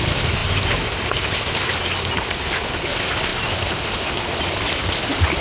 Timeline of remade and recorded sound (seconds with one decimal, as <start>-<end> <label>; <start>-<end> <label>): 0.0-5.4 recorded